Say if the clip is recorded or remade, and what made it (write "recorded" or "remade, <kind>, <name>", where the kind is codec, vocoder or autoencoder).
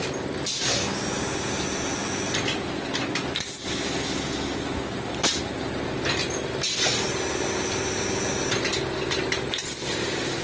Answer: recorded